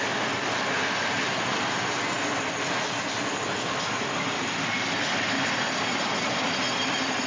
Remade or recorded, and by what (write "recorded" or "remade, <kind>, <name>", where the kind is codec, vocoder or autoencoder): recorded